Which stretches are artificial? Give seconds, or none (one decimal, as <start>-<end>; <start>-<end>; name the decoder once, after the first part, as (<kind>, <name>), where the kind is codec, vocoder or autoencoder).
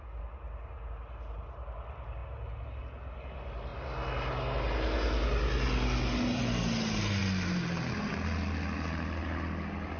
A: none